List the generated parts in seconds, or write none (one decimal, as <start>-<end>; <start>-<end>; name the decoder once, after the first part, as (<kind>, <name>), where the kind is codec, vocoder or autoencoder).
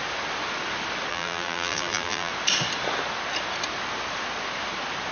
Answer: 1.1-2.3 (vocoder, BigVGAN v2)